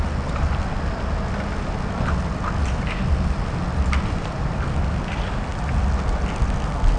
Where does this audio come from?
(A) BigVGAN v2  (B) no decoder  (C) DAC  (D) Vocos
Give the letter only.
B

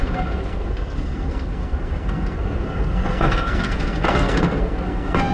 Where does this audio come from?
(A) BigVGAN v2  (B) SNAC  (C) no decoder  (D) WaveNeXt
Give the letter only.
B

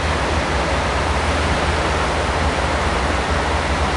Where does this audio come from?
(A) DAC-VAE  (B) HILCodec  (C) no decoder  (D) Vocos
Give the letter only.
C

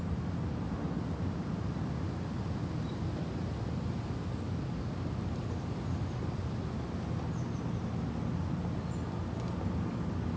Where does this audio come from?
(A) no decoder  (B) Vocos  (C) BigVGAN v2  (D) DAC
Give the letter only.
A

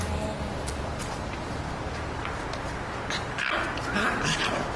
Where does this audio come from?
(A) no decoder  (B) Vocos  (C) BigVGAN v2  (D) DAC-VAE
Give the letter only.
A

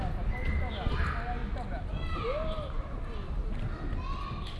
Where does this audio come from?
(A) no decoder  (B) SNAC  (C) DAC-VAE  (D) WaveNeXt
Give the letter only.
A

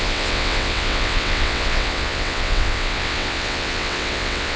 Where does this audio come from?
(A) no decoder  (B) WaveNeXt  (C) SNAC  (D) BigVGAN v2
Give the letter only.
B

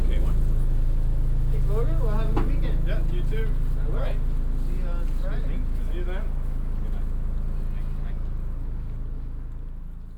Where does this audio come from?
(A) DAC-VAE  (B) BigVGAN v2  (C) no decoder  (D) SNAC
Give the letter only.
C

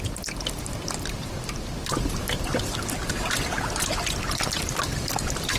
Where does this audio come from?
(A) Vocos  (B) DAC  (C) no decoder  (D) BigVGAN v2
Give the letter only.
C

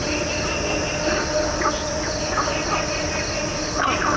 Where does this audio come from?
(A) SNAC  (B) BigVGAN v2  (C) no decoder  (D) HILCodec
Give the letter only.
C